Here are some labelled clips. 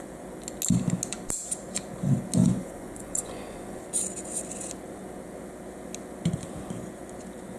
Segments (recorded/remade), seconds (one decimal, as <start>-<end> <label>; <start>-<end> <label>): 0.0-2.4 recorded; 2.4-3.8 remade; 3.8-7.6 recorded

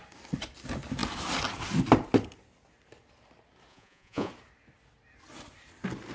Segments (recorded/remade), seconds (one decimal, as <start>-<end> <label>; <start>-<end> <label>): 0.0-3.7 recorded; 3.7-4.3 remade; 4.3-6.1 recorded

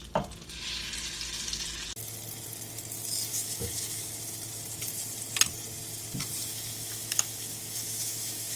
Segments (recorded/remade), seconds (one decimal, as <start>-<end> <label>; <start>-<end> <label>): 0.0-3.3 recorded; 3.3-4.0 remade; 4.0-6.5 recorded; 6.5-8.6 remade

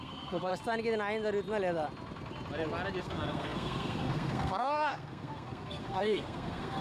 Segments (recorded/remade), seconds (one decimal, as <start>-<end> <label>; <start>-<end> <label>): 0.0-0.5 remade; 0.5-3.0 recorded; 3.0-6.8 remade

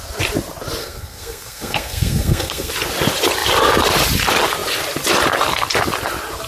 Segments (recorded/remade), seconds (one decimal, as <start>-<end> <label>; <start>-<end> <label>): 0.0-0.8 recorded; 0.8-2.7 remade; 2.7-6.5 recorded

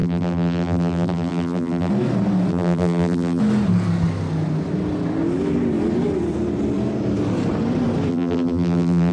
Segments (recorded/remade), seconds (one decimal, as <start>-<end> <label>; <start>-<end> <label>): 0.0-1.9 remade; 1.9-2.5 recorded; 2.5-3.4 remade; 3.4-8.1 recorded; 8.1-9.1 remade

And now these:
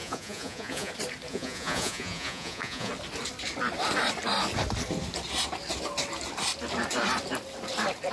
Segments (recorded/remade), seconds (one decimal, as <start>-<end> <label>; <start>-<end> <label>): 0.0-0.9 remade; 0.9-1.3 recorded; 1.3-2.9 remade; 2.9-8.1 recorded

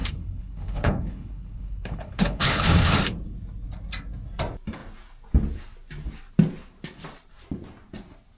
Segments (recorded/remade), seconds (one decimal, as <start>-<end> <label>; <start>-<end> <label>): 0.0-2.9 remade; 2.9-8.4 recorded